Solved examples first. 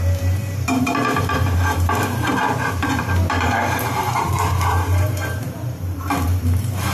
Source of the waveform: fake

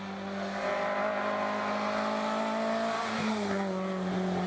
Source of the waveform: real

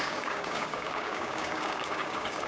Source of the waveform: fake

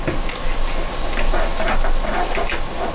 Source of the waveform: real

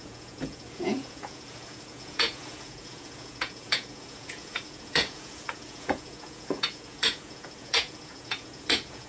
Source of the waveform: fake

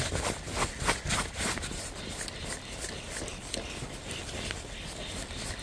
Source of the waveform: real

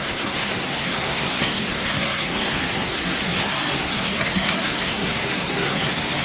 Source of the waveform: fake